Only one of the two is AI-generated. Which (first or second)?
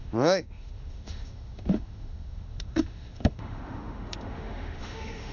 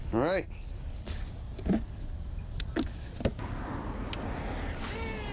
first